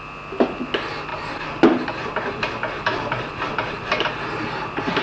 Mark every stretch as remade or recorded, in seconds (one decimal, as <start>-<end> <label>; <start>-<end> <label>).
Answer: 0.0-1.1 recorded; 1.1-4.1 remade; 4.1-5.0 recorded